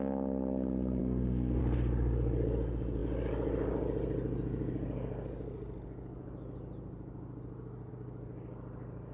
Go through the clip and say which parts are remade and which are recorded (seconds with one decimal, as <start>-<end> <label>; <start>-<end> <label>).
0.0-1.0 recorded; 1.0-1.6 remade; 1.6-9.1 recorded

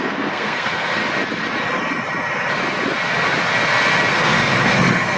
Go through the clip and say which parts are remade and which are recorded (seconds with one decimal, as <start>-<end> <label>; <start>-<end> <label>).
0.0-1.0 remade; 1.0-4.1 recorded; 4.1-5.2 remade

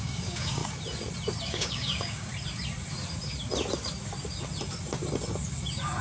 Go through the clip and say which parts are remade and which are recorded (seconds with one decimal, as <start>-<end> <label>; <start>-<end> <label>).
0.0-0.6 remade; 0.6-1.4 recorded; 1.4-2.3 remade; 2.3-6.0 recorded

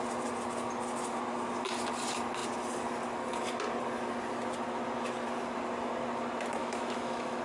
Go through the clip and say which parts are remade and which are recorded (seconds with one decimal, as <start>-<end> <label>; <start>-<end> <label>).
0.0-6.6 recorded; 6.6-7.4 remade

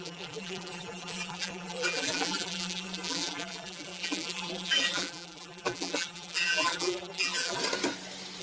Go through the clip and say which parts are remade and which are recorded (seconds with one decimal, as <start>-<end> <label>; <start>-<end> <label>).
0.0-7.6 remade; 7.6-8.4 recorded